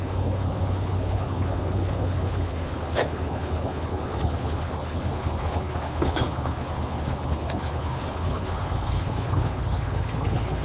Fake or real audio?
fake